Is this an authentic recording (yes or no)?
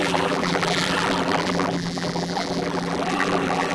no